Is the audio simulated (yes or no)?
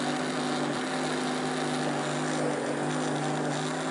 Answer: no